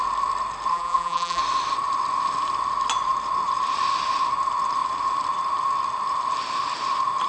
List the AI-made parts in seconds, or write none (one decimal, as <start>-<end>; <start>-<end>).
0.7-1.4